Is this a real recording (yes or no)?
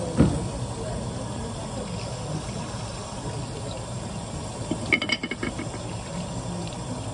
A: yes